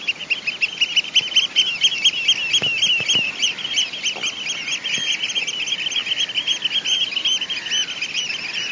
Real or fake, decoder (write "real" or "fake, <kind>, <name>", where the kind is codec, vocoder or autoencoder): real